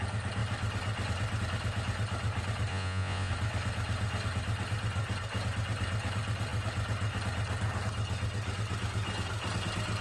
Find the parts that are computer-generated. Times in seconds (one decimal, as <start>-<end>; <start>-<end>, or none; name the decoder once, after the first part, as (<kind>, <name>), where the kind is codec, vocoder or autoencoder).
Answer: 2.7-3.3 (vocoder, Vocos)

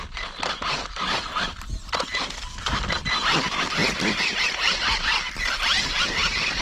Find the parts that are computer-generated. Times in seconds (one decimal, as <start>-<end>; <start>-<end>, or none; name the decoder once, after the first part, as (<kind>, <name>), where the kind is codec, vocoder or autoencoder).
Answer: 3.8-5.8 (vocoder, BigVGAN v2)

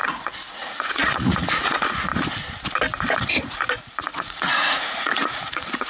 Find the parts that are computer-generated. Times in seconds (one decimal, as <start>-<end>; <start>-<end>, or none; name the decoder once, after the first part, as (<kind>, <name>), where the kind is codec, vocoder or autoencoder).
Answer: 0.0-2.1 (vocoder, Vocos); 3.3-5.9

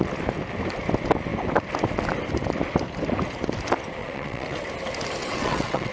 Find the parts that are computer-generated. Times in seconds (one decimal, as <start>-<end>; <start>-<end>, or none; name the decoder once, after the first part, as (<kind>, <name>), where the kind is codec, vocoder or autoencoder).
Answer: 4.0-4.7 (vocoder, WaveNeXt); 5.2-5.9

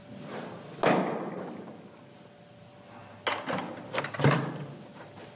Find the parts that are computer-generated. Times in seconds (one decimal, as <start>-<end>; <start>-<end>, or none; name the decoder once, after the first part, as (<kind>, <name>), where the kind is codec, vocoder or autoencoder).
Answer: none